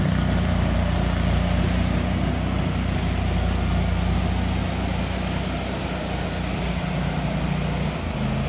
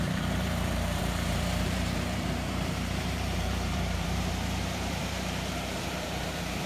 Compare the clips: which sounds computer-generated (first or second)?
second